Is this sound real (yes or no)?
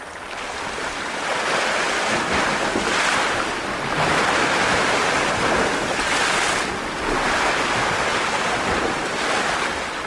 yes